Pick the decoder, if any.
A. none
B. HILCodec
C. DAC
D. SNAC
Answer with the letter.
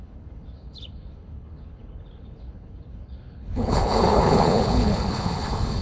B